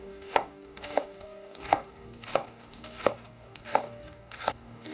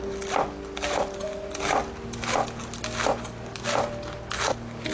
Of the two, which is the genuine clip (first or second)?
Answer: second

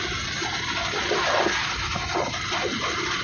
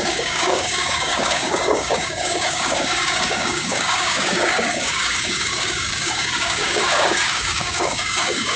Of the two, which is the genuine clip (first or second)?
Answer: first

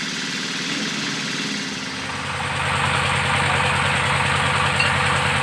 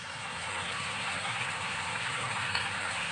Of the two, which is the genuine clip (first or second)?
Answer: first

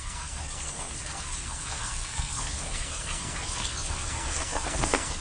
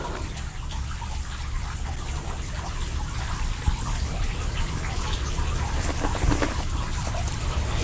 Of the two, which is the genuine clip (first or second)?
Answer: second